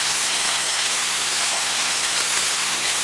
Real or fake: fake